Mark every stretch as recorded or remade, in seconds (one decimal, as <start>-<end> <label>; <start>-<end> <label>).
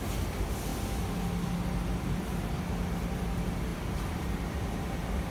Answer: 0.0-3.7 recorded; 3.7-4.6 remade; 4.6-5.3 recorded